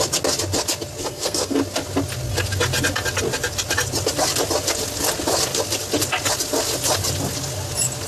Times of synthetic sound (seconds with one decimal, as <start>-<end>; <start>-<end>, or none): 1.0-1.6